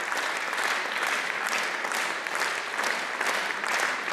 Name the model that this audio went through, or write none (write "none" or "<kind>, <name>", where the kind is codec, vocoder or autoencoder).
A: none